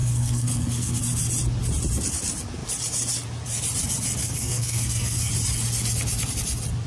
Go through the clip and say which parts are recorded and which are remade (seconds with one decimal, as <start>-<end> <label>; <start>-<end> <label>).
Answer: 0.0-1.0 remade; 1.0-4.2 recorded; 4.2-5.3 remade; 5.3-6.9 recorded